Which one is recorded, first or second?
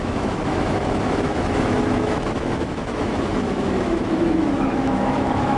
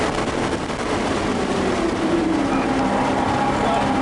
second